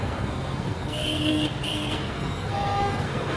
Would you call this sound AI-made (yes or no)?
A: yes